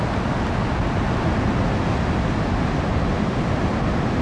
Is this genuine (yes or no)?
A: yes